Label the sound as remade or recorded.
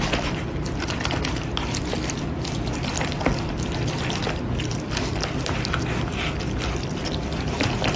remade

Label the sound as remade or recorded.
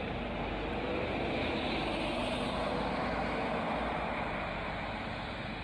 recorded